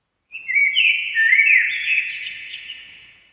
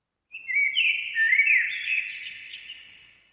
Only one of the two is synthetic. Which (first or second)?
first